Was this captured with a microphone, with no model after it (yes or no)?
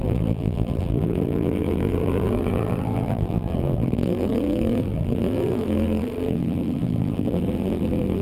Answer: no